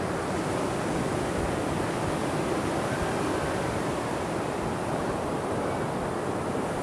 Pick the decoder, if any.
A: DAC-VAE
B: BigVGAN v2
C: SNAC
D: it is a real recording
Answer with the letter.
B